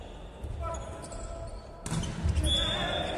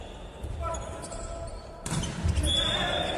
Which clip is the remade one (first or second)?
second